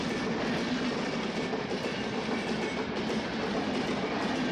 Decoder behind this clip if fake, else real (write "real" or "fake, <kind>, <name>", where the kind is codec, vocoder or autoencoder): real